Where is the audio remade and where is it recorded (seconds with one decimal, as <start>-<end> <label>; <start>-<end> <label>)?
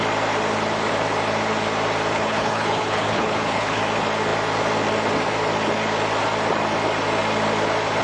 0.0-2.1 recorded; 2.1-3.8 remade; 3.8-8.0 recorded